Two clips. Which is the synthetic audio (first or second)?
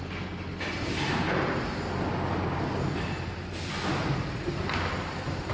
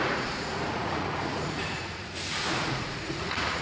second